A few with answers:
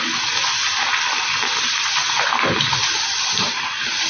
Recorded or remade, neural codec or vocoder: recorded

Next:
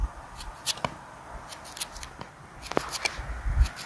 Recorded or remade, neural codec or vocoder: recorded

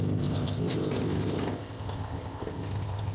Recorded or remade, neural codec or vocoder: remade, codec, ZipCodec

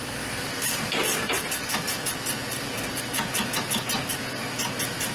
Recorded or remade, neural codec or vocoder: recorded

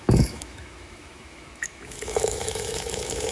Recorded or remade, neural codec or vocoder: remade, autoencoder, DAC-VAE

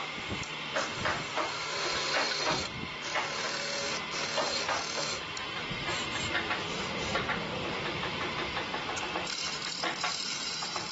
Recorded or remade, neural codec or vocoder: remade, vocoder, BigVGAN v2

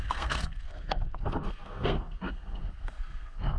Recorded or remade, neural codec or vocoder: remade, codec, SNAC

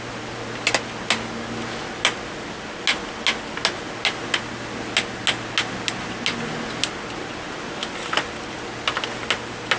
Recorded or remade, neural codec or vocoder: recorded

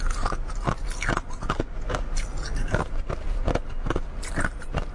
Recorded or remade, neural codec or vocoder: recorded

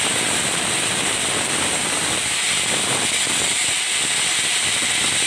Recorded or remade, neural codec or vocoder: remade, vocoder, BigVGAN v2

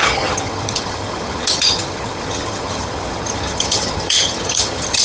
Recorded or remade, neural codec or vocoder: remade, vocoder, HiFi-GAN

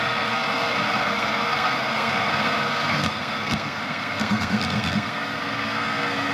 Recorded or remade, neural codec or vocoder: remade, codec, SNAC